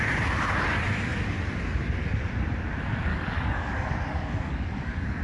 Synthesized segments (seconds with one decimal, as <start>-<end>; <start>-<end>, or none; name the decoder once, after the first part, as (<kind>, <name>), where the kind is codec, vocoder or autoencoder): 3.1-5.2 (codec, DAC)